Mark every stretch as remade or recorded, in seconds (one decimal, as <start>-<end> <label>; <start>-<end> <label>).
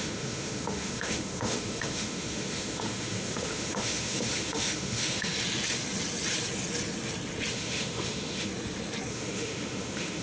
0.0-5.3 remade; 5.3-7.5 recorded; 7.5-8.5 remade; 8.5-9.1 recorded; 9.1-10.2 remade